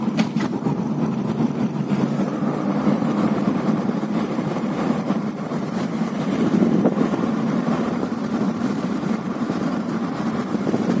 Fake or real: fake